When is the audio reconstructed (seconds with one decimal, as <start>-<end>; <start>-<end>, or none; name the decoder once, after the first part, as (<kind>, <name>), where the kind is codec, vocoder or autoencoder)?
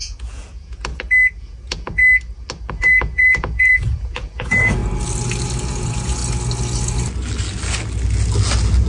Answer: 0.0-0.9 (vocoder, Vocos); 1.4-2.0; 2.7-4.8; 5.7-6.2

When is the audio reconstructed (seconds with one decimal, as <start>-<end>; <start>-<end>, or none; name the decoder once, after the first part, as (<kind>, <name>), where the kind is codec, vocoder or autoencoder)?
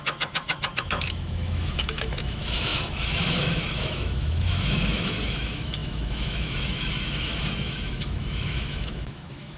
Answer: 0.0-9.6 (autoencoder, DAC-VAE)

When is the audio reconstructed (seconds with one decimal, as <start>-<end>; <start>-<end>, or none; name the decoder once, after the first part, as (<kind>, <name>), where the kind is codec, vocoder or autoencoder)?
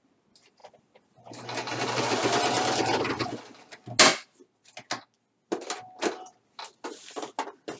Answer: none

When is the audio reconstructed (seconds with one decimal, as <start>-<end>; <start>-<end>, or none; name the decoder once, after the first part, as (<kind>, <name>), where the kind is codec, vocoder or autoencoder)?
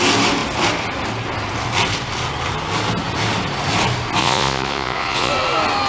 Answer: 4.2-5.3 (vocoder, Vocos)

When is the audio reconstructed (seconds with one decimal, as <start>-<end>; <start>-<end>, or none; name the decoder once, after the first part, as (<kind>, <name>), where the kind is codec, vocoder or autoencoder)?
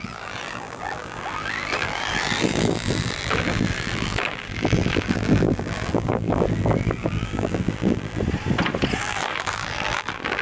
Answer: 0.0-8.2 (vocoder, BigVGAN v2); 9.0-10.4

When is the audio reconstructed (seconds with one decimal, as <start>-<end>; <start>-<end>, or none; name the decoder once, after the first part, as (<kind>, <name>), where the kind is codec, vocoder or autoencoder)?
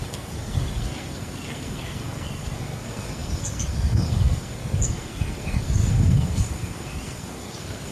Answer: 0.0-7.9 (codec, SNAC)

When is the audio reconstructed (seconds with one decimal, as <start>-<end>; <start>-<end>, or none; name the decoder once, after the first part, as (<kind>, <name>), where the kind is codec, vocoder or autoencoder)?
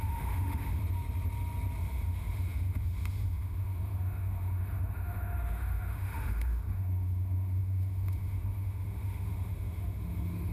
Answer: 0.0-0.8 (autoencoder, DAC-VAE); 1.8-10.5